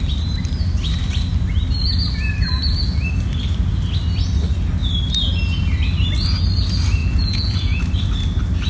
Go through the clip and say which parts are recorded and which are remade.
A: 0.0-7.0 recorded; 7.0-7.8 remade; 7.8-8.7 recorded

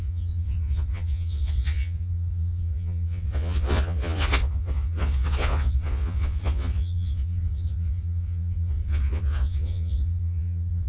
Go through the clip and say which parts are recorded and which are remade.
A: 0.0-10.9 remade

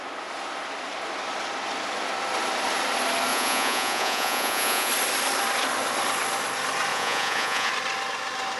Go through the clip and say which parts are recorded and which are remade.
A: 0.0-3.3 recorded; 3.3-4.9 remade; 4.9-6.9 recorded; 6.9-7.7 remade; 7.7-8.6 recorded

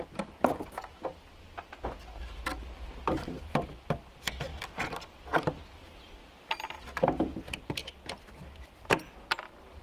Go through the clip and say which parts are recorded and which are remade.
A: 0.0-9.8 recorded

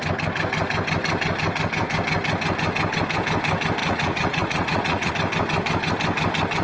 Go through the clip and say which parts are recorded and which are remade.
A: 0.0-3.8 recorded; 3.8-5.1 remade; 5.1-6.6 recorded